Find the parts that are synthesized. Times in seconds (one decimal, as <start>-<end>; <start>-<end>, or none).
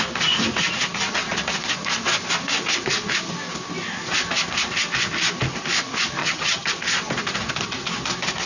6.2-6.7